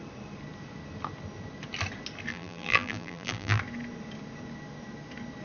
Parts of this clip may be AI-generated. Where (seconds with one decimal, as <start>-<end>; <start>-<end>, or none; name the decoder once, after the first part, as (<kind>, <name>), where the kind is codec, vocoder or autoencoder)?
2.3-3.6 (vocoder, BigVGAN v2)